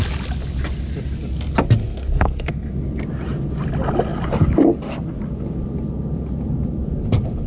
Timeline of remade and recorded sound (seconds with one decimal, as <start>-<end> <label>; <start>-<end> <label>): 0.0-1.8 recorded; 1.8-2.7 remade; 2.7-7.5 recorded

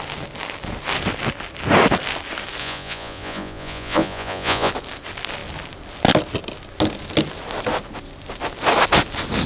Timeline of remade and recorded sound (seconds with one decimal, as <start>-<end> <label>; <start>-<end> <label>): 0.0-2.6 recorded; 2.6-4.7 remade; 4.7-9.5 recorded

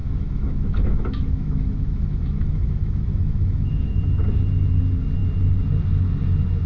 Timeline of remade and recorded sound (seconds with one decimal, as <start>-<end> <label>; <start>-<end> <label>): 0.0-4.0 remade; 4.0-6.7 recorded

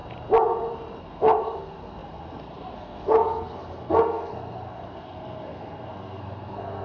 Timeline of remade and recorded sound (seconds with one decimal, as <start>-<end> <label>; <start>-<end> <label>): 0.0-1.0 recorded; 1.0-6.8 remade